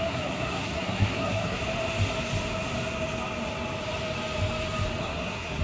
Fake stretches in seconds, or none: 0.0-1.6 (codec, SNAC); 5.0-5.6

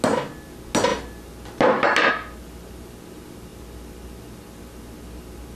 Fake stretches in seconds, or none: none

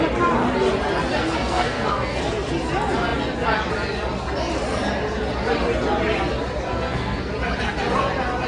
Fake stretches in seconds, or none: 1.2-2.2 (codec, SNAC); 6.7-7.3

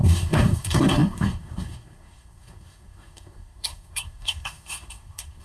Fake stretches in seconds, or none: 0.0-5.4 (codec, SNAC)

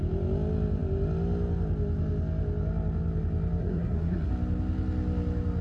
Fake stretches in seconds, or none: 3.6-4.3 (codec, SNAC)

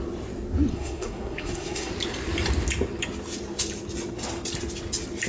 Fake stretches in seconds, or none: 0.7-1.9 (codec, SNAC)